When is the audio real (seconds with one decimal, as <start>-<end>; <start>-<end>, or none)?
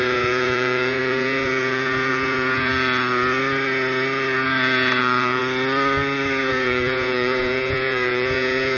2.7-5.0; 5.4-6.5